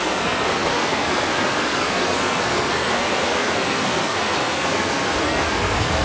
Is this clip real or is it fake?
fake